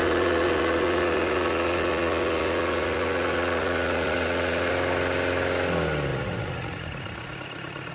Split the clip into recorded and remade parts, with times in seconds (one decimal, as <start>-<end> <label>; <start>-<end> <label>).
0.0-4.7 remade; 4.7-6.1 recorded; 6.1-7.9 remade